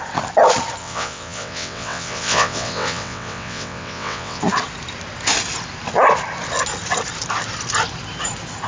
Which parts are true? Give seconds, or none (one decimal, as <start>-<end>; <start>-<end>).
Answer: 0.0-0.8; 4.4-8.7